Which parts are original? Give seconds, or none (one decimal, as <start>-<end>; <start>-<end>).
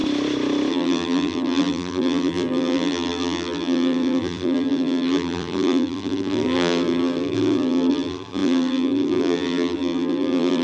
0.0-0.7